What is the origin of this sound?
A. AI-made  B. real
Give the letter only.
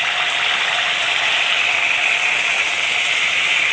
B